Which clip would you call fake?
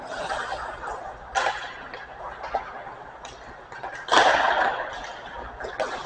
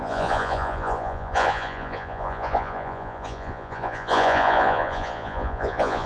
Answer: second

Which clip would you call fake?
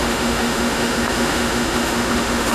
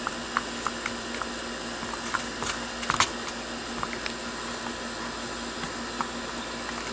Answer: first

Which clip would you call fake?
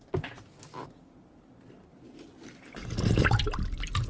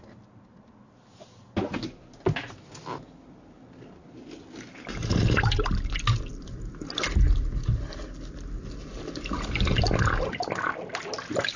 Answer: first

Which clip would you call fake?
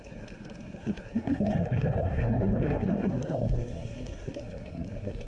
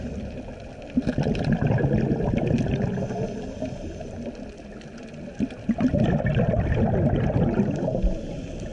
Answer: first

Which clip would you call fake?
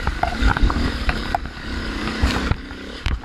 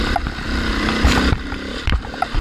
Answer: first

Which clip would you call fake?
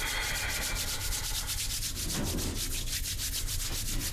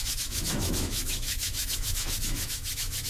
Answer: second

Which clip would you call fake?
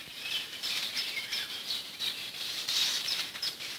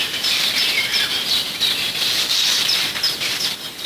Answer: first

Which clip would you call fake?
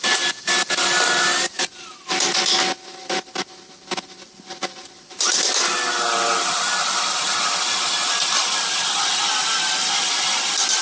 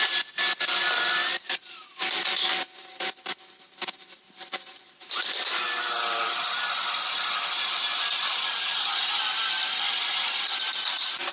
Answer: second